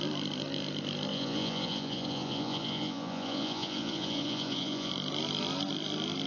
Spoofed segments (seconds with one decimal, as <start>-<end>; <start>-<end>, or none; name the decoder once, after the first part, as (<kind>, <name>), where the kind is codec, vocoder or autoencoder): 1.1-4.9 (vocoder, Vocos)